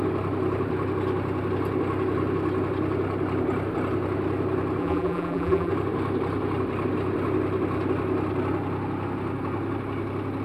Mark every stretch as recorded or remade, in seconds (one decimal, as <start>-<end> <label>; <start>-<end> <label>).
0.0-4.8 recorded; 4.8-5.7 remade; 5.7-10.4 recorded